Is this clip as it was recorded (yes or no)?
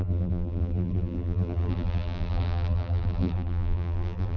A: no